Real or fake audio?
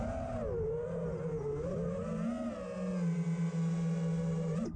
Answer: real